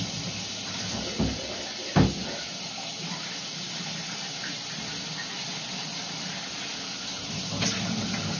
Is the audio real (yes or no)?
yes